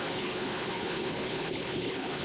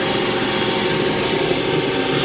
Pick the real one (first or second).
second